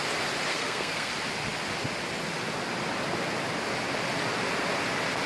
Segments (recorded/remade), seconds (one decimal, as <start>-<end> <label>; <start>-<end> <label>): 0.0-0.5 recorded; 0.5-1.1 remade; 1.1-5.3 recorded